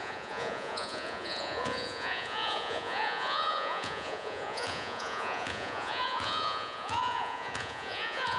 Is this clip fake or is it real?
fake